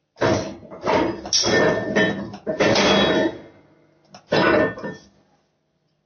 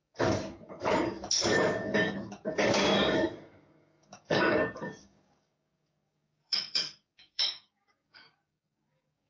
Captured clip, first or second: first